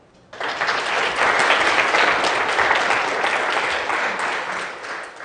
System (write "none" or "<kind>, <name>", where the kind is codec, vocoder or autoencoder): none